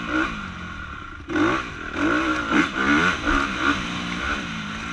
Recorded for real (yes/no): yes